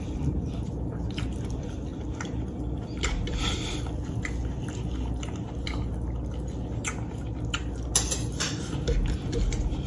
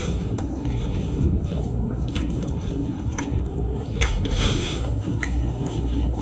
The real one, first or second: first